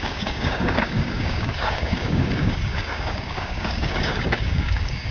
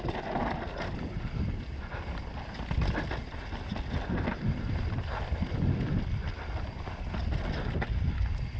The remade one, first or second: first